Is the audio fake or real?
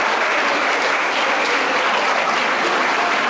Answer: real